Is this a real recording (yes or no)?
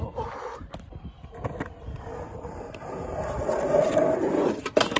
yes